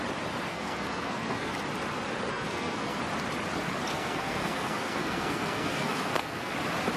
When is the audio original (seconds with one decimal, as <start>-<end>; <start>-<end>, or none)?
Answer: 0.0-0.5; 1.5-2.3; 3.0-3.9; 6.5-7.0